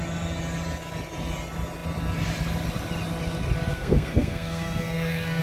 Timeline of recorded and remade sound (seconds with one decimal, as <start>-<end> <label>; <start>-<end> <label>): 0.0-3.7 recorded; 3.7-5.4 remade

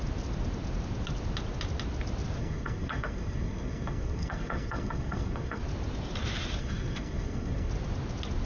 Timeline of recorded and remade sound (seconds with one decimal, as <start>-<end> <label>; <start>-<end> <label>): 0.0-2.4 recorded; 2.4-5.6 remade; 5.6-6.6 recorded; 6.6-7.7 remade; 7.7-8.5 recorded

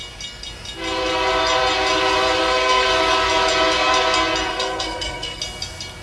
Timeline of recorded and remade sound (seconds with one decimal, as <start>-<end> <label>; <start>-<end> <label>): 0.0-2.4 recorded; 2.4-2.9 remade; 2.9-4.5 recorded; 4.5-5.4 remade; 5.4-6.0 recorded

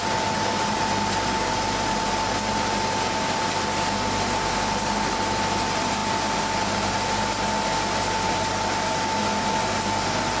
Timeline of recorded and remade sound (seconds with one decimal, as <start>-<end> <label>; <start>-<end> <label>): 0.0-10.4 recorded

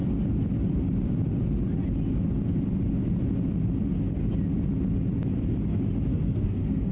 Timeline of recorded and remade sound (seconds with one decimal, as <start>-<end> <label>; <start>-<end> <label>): 0.0-6.1 recorded; 6.1-6.9 remade